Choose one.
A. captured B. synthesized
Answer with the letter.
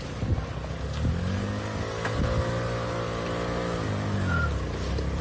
A